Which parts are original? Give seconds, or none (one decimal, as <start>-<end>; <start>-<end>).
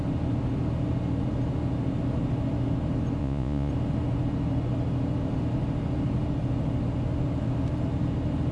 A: 0.0-3.2; 3.7-8.5